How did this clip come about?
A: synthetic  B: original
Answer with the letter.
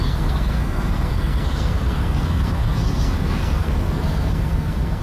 A